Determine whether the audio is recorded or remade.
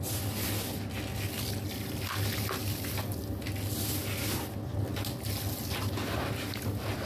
recorded